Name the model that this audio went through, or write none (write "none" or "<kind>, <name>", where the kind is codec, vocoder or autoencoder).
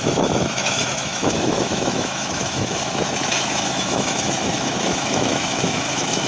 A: autoencoder, DAC-VAE